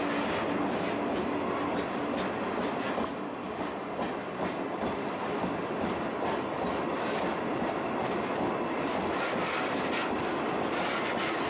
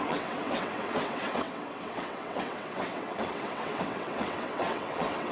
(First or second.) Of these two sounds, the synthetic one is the second